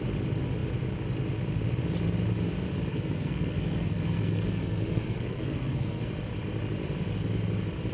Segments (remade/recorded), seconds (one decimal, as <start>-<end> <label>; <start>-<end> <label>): 0.0-2.9 recorded; 2.9-6.1 remade; 6.1-7.9 recorded

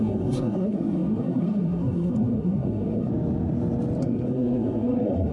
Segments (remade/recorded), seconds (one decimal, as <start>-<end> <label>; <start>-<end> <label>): 0.0-3.1 remade; 3.1-4.0 recorded; 4.0-5.3 remade

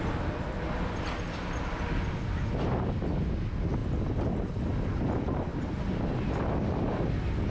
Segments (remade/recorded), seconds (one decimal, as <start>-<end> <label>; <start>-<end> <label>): 0.0-7.5 recorded

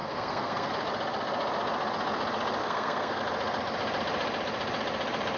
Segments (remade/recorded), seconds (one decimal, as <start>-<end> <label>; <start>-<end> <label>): 0.0-0.7 remade; 0.7-2.6 recorded; 2.6-3.2 remade; 3.2-5.4 recorded

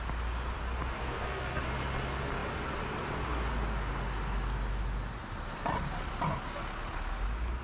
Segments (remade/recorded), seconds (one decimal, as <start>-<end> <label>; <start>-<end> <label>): 0.0-1.0 recorded; 1.0-1.6 remade; 1.6-7.6 recorded

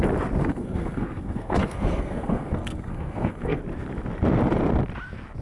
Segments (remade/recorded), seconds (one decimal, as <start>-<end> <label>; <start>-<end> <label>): 0.0-0.4 recorded; 0.4-3.6 remade; 3.6-5.4 recorded

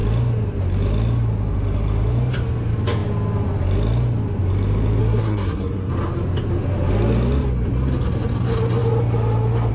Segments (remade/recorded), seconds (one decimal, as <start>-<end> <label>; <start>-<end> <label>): 0.0-5.0 recorded; 5.0-5.9 remade; 5.9-9.7 recorded